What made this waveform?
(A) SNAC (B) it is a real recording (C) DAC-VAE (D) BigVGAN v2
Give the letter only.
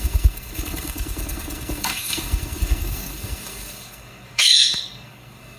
A